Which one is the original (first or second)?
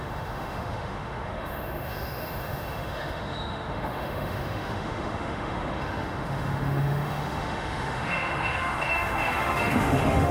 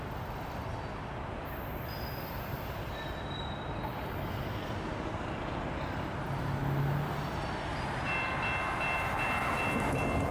second